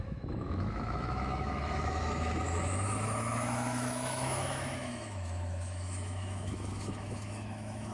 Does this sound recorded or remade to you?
remade